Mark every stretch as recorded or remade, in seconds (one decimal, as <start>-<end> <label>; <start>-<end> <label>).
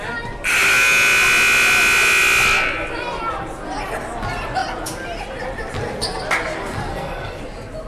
0.0-6.9 recorded; 6.9-7.4 remade; 7.4-7.9 recorded